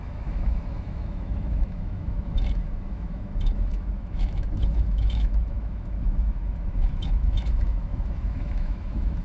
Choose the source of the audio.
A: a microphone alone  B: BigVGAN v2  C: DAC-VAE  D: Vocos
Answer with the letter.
C